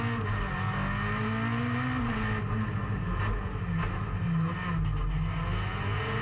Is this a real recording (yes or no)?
yes